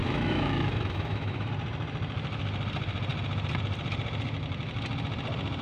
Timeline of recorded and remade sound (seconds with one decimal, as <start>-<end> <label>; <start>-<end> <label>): 0.0-1.5 remade; 1.5-5.6 recorded